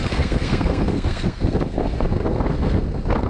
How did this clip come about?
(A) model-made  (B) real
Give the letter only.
A